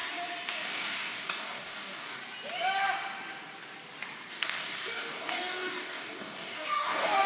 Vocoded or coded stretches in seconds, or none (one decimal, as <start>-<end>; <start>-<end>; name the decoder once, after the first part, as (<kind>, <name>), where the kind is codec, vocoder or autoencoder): 0.5-2.2 (codec, DAC); 4.3-7.3